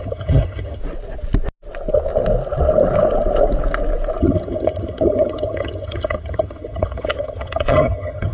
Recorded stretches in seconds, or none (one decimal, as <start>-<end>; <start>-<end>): 0.8-4.2